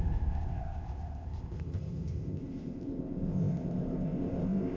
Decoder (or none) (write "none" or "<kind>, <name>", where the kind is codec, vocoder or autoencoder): codec, ZipCodec